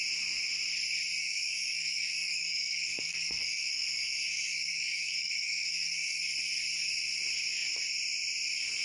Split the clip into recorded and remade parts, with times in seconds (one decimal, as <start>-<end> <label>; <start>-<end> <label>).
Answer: 0.0-1.2 recorded; 1.2-6.2 remade; 6.2-8.8 recorded